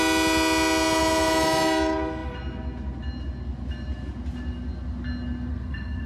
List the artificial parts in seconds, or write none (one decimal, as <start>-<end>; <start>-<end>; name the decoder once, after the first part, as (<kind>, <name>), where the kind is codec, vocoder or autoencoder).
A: 5.5-6.1 (codec, SNAC)